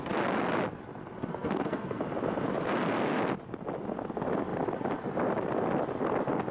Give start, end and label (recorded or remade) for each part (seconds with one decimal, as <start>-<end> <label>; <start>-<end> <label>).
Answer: 0.0-1.3 recorded; 1.3-2.0 remade; 2.0-6.5 recorded